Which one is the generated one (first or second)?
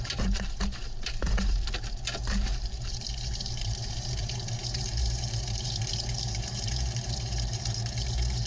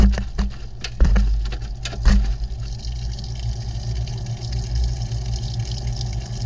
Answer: first